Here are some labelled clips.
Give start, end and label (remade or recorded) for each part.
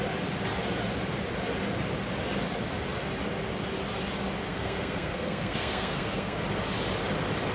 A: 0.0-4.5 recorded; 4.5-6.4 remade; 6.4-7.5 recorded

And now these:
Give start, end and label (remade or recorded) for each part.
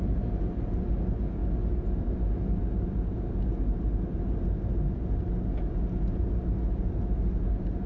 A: 0.0-7.9 recorded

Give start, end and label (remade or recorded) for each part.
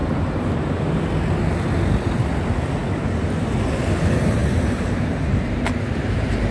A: 0.0-0.9 remade; 0.9-4.4 recorded; 4.4-6.5 remade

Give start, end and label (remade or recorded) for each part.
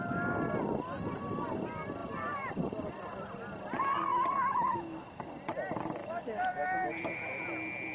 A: 0.0-4.4 recorded; 4.4-5.3 remade; 5.3-6.0 recorded; 6.0-7.4 remade; 7.4-7.9 recorded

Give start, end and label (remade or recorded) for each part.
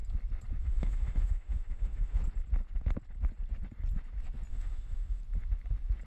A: 0.0-0.6 recorded; 0.6-2.2 remade; 2.2-4.5 recorded; 4.5-5.2 remade; 5.2-6.1 recorded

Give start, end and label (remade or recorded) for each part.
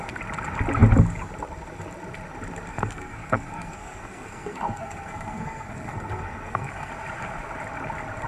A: 0.0-2.7 recorded; 2.7-6.9 remade; 6.9-8.3 recorded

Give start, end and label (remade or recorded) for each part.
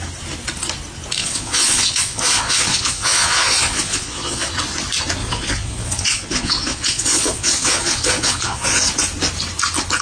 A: 0.0-1.2 recorded; 1.2-4.5 remade; 4.5-5.2 recorded; 5.2-8.8 remade; 8.8-10.0 recorded